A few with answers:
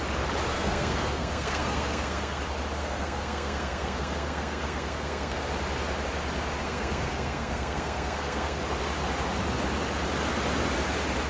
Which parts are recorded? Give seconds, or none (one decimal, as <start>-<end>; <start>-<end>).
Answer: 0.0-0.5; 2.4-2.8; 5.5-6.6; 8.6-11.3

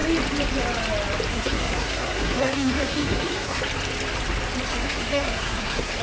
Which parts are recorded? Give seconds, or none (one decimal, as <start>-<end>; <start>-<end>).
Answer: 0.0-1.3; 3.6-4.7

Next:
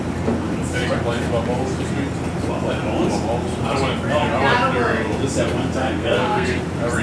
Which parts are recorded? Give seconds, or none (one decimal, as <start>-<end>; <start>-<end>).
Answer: 0.0-5.8; 6.6-7.0